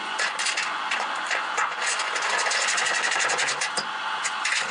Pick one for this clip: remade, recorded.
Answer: remade